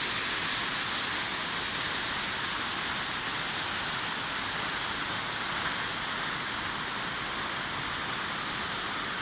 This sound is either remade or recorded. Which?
recorded